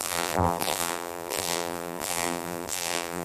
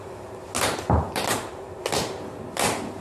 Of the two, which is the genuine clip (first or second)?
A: second